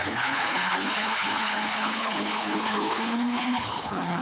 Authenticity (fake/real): fake